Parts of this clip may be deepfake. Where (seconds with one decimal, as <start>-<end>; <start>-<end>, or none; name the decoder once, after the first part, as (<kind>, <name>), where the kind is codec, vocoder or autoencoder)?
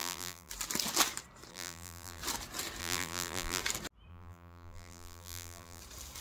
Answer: 0.0-0.5 (vocoder, BigVGAN v2); 1.5-2.2; 2.8-3.6; 4.1-5.8